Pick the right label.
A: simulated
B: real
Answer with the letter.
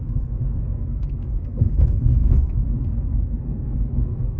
A